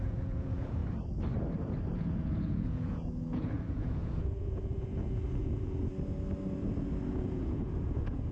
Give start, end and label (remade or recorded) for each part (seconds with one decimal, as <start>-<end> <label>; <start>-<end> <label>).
0.0-0.8 remade; 0.8-1.9 recorded; 1.9-5.9 remade; 5.9-7.1 recorded; 7.1-8.3 remade